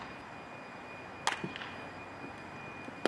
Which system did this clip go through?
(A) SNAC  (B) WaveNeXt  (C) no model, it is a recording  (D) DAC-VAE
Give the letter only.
C